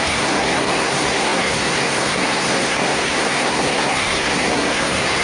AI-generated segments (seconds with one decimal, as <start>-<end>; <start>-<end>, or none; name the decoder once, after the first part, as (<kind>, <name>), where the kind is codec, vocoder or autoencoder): 0.0-5.2 (codec, SNAC)